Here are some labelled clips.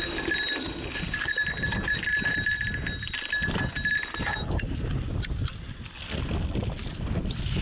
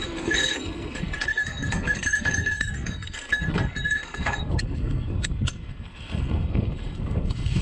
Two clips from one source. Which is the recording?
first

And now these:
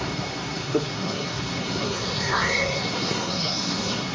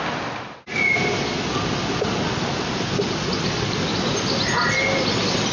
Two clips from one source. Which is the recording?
second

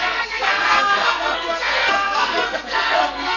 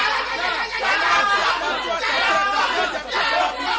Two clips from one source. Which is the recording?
second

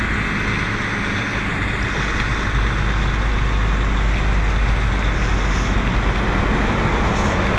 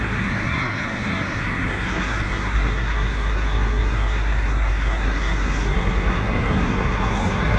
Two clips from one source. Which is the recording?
first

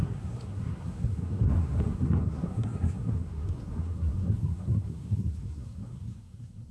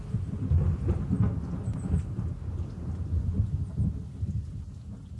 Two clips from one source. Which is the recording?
second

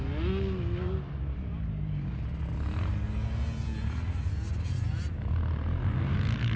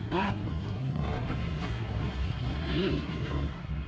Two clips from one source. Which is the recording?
first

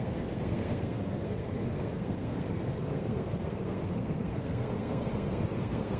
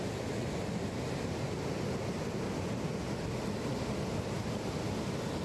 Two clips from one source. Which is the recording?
second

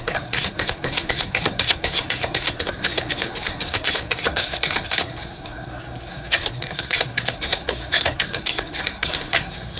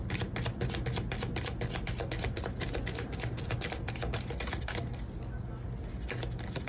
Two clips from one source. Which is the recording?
second